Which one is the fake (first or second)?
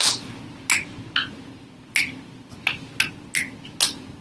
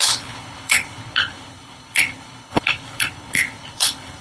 second